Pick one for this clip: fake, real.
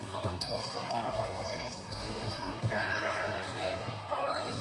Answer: fake